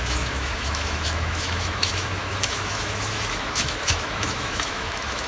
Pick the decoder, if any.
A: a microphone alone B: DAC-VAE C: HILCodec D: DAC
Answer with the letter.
B